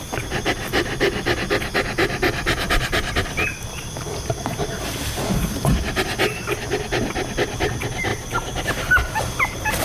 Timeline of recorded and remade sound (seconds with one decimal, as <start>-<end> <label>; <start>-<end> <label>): 0.0-8.1 recorded; 8.1-9.8 remade

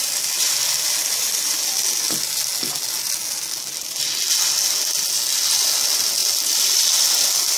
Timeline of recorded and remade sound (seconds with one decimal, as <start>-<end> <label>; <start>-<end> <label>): 0.0-7.6 recorded

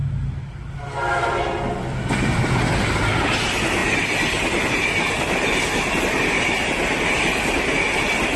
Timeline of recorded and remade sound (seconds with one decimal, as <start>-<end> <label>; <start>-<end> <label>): 0.0-8.4 recorded